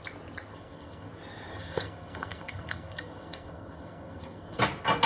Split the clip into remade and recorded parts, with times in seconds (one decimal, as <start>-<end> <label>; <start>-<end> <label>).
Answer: 0.0-0.5 recorded; 0.5-1.1 remade; 1.1-1.5 recorded; 1.5-4.6 remade; 4.6-5.1 recorded